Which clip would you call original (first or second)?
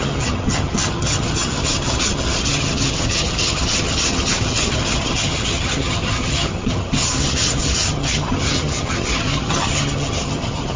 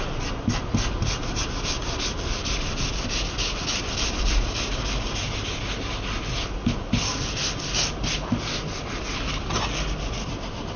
second